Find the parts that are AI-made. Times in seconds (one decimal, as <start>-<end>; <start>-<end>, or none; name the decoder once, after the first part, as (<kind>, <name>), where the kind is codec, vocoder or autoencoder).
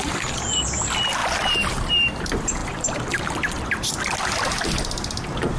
1.2-1.9 (vocoder, BigVGAN v2); 2.6-4.0